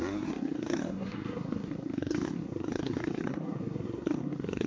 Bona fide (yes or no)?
no